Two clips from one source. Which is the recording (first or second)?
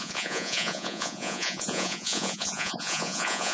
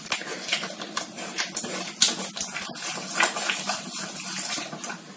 second